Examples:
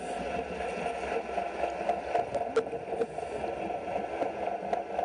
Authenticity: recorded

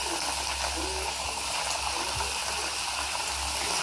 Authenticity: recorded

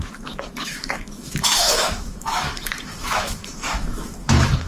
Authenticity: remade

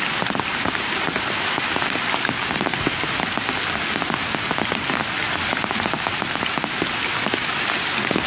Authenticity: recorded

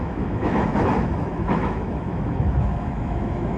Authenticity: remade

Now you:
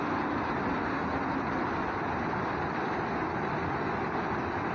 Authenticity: recorded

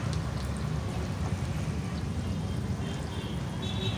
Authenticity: recorded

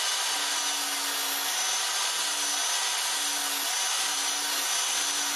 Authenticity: recorded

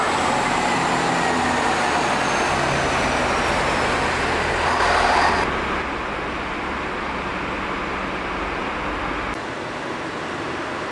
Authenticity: recorded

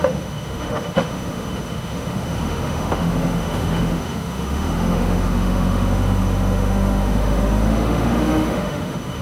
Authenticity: remade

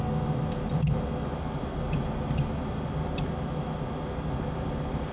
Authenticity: recorded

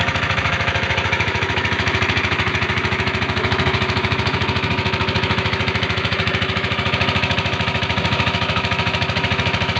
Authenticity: remade